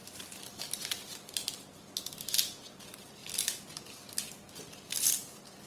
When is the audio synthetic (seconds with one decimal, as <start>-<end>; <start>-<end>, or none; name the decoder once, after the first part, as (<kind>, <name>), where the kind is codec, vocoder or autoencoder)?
none